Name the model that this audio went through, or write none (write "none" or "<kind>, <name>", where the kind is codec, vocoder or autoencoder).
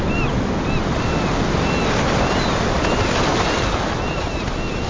none